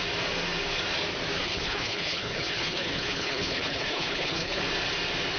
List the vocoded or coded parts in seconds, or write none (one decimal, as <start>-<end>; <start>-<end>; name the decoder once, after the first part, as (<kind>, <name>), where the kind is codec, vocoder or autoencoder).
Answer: 1.4-4.6 (codec, HILCodec)